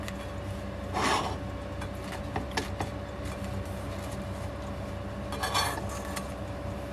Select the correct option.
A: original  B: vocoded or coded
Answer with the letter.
A